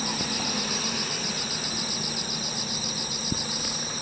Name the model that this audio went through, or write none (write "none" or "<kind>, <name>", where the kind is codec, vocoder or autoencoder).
none